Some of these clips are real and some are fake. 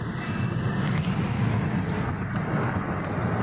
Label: real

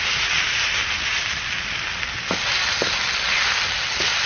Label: real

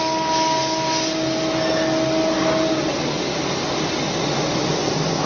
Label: real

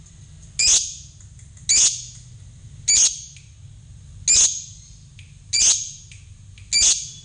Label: real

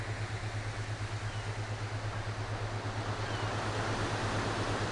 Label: real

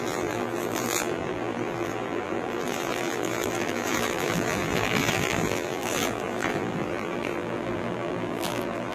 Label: fake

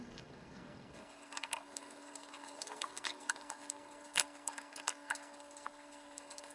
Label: fake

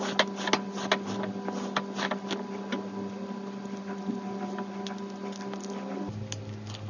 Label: real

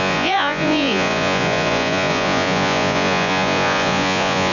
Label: fake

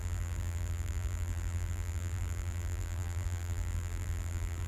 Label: fake